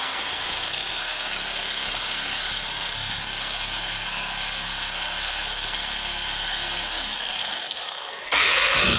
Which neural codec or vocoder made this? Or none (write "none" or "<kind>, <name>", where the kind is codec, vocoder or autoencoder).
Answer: codec, SNAC